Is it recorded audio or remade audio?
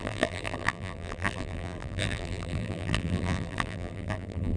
remade